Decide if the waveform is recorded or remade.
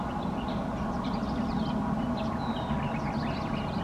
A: recorded